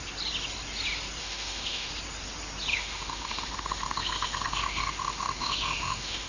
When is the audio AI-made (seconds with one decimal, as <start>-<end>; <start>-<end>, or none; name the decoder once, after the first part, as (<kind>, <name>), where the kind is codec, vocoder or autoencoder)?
1.2-1.9 (autoencoder, DAC-VAE); 2.7-6.3